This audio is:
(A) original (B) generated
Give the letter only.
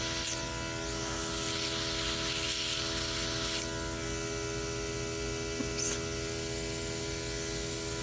A